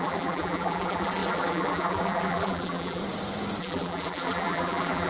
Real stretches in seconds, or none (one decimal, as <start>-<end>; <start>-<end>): 3.0-3.6